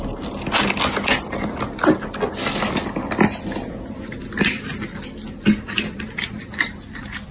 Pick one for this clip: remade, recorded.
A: recorded